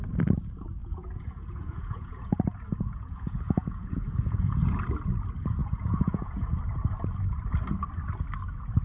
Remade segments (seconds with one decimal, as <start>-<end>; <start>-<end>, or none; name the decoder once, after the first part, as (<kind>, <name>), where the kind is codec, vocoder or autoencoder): 0.8-4.5 (vocoder, Vocos); 5.6-6.6